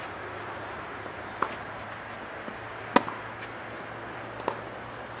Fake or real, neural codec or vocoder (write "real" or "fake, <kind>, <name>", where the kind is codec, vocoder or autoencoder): real